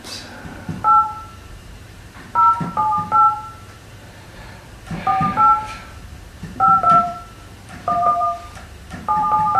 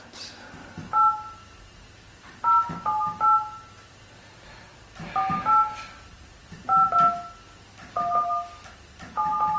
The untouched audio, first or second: second